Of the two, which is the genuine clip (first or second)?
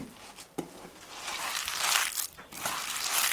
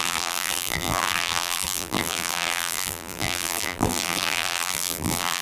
first